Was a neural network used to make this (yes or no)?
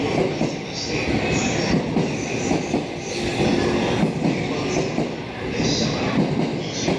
no